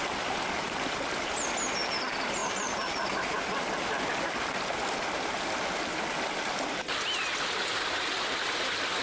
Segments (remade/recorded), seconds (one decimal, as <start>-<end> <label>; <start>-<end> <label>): 0.0-9.0 recorded